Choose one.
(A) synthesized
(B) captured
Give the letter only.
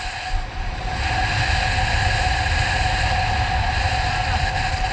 B